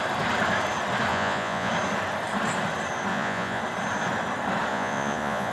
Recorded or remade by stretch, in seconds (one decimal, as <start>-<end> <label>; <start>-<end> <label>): 0.0-1.1 recorded; 1.1-1.7 remade; 1.7-3.1 recorded; 3.1-3.6 remade; 3.6-4.7 recorded; 4.7-5.5 remade